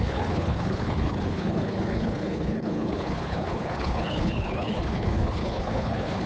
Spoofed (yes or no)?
yes